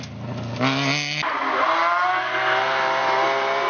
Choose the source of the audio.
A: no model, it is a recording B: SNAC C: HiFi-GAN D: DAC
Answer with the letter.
A